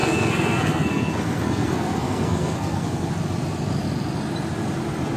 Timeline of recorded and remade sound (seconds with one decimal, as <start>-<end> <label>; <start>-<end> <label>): 0.0-3.1 remade; 3.1-5.2 recorded